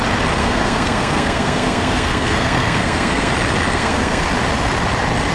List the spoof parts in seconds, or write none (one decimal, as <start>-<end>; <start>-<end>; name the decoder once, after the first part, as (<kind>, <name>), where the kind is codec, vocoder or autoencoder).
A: 0.4-3.3 (codec, SNAC); 3.7-4.2